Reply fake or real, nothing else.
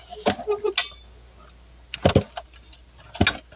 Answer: real